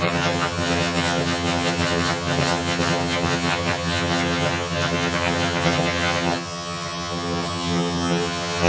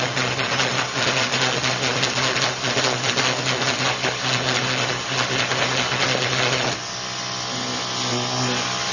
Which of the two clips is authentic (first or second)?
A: second